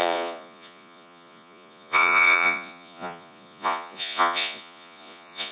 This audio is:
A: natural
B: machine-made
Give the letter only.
B